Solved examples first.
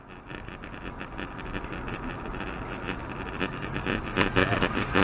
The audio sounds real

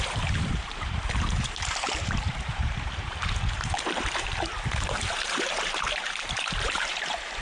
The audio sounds fake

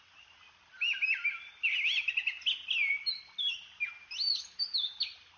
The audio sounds real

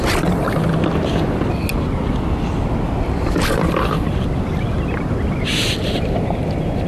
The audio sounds real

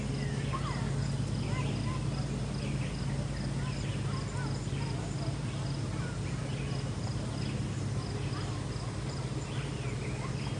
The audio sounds real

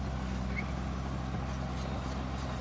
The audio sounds real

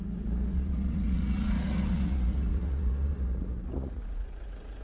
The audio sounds fake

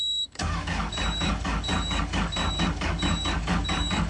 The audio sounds fake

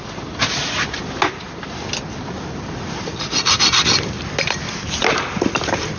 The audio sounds real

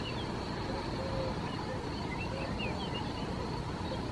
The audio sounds real